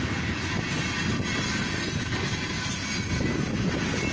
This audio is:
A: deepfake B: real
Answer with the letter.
B